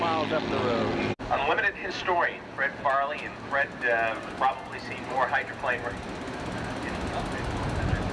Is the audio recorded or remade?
recorded